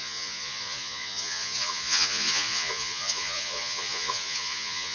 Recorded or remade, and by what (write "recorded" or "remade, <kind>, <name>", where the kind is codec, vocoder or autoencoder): remade, vocoder, Vocos